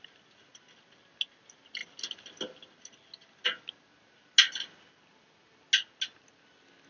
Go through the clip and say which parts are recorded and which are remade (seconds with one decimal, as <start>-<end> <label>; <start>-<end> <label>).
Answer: 0.0-6.9 recorded